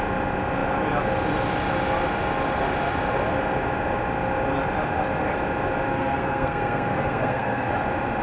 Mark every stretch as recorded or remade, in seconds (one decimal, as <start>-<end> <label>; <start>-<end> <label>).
0.0-5.9 recorded; 5.9-7.7 remade; 7.7-8.2 recorded